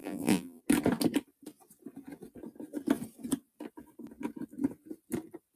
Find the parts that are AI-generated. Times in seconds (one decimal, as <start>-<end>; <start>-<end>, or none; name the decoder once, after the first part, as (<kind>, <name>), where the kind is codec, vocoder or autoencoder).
0.0-0.6 (vocoder, BigVGAN v2)